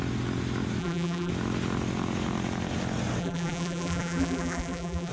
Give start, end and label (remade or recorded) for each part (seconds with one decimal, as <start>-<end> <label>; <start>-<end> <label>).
0.0-0.8 recorded; 0.8-1.3 remade; 1.3-3.2 recorded; 3.2-5.1 remade

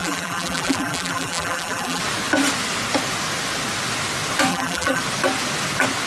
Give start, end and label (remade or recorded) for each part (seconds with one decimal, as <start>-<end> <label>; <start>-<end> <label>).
0.0-2.0 remade; 2.0-4.5 recorded; 4.5-5.0 remade; 5.0-6.1 recorded

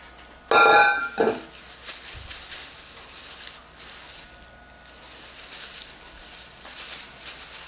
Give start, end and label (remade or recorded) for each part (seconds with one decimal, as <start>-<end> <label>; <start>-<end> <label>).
0.0-7.7 recorded